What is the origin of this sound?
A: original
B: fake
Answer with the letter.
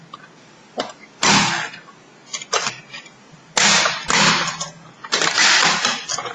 A